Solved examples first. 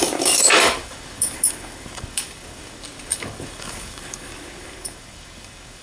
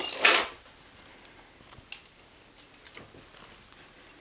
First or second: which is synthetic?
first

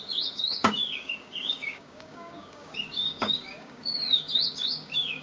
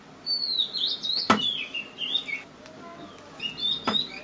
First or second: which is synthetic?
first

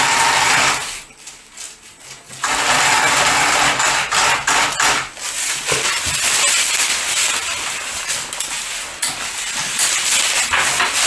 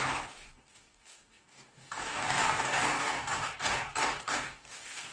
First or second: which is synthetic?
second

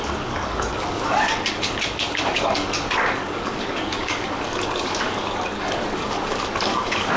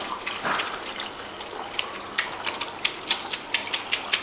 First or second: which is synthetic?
first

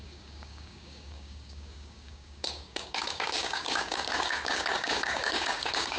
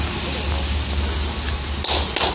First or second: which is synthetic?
first